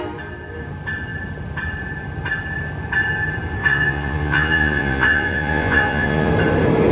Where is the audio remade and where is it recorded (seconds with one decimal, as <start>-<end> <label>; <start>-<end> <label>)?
0.0-3.6 recorded; 3.6-6.3 remade; 6.3-6.9 recorded

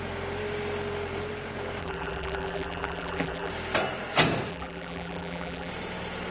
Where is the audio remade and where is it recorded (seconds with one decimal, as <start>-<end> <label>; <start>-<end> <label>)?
0.0-1.8 recorded; 1.8-3.5 remade; 3.5-4.5 recorded; 4.5-5.7 remade; 5.7-6.3 recorded

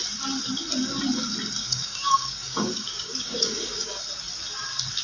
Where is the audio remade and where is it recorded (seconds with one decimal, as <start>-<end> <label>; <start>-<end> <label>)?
0.0-1.6 recorded; 1.6-4.0 remade; 4.0-5.0 recorded

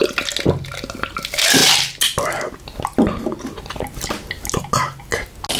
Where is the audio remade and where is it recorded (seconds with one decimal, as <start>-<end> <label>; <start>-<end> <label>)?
0.0-5.6 recorded

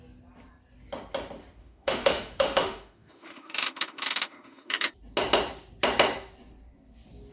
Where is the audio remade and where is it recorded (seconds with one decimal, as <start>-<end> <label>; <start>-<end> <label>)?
0.0-1.6 recorded; 1.6-4.9 remade; 4.9-7.3 recorded